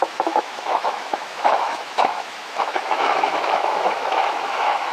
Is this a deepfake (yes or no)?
yes